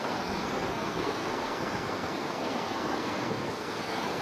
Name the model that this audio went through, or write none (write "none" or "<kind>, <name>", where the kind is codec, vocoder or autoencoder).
codec, SNAC